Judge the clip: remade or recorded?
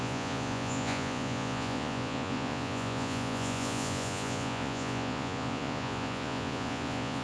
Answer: remade